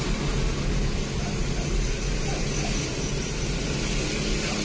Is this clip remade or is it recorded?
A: recorded